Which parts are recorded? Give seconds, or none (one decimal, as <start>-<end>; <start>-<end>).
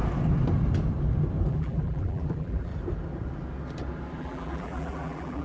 0.0-1.5; 2.7-4.2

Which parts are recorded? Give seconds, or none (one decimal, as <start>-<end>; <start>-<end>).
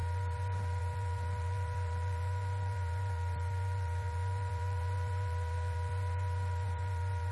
none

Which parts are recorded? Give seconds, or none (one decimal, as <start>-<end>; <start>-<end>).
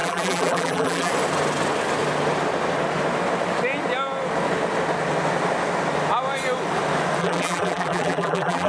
1.1-7.2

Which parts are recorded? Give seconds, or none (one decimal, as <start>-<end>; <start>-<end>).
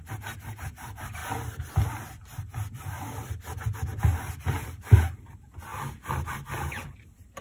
5.7-6.3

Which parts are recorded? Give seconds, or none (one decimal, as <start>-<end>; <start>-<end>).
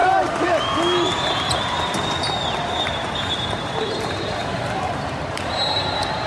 0.0-3.3